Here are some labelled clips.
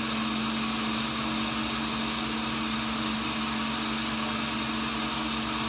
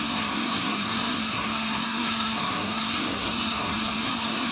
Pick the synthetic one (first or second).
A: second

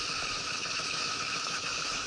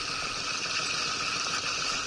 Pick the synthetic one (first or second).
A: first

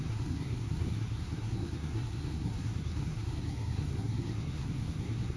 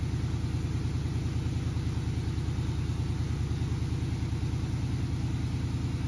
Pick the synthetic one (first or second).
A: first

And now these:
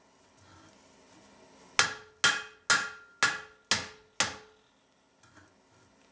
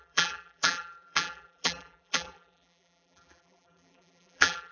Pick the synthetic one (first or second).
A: second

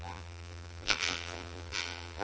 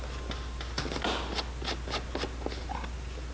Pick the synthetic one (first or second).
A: first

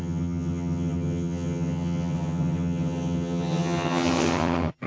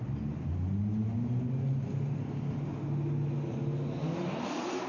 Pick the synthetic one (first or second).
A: first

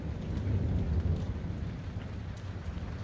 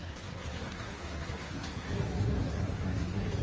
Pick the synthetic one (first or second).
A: second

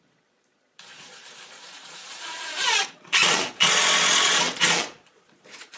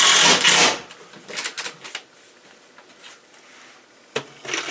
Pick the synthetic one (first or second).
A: first